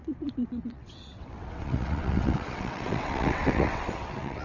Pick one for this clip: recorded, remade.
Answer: remade